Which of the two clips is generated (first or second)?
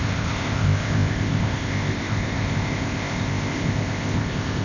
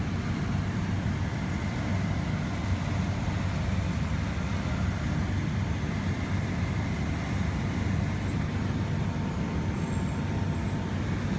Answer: first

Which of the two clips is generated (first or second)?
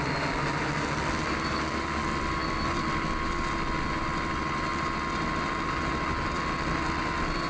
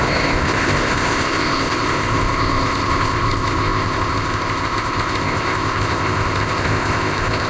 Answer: second